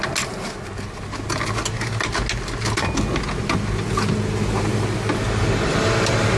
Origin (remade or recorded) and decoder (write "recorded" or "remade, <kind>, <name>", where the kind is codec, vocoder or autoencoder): recorded